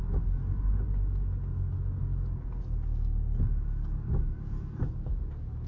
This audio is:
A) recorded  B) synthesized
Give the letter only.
A